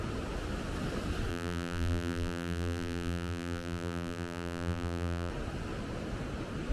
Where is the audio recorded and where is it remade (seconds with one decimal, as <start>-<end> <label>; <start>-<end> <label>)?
0.0-1.3 recorded; 1.3-5.3 remade; 5.3-6.7 recorded